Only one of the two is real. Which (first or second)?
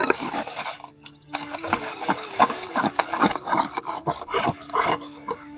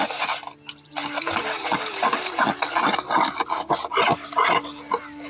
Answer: second